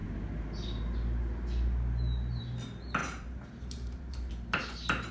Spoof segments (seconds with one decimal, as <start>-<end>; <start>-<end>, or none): 3.0-4.3

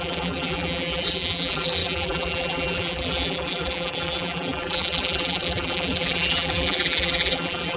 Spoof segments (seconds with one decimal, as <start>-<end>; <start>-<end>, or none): 0.0-7.8